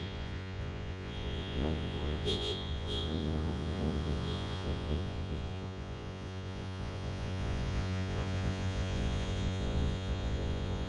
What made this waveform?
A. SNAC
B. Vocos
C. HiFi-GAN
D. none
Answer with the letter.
B